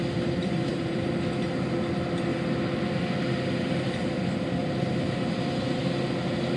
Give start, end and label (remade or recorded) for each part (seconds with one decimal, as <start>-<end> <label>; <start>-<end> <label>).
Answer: 0.0-0.4 recorded; 0.4-1.1 remade; 1.1-4.6 recorded; 4.6-5.8 remade; 5.8-6.6 recorded